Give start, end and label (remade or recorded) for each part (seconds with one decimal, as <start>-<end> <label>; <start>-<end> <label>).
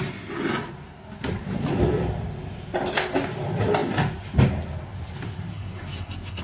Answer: 0.0-5.5 recorded; 5.5-6.4 remade